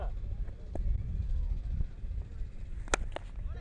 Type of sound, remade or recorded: recorded